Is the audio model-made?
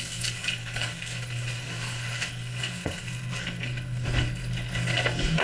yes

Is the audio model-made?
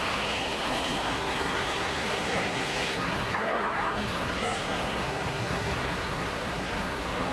yes